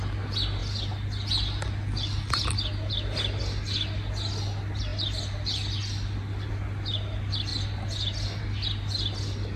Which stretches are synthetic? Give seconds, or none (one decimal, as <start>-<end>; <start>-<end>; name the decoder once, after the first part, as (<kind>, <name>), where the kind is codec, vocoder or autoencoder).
none